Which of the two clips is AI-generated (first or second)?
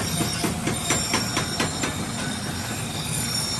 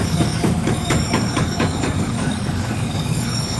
second